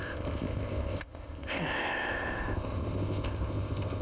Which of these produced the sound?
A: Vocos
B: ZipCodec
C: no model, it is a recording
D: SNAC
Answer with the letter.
B